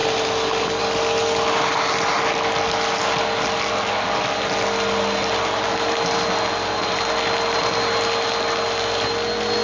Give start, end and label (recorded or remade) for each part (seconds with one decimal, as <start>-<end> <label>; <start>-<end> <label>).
0.0-9.6 recorded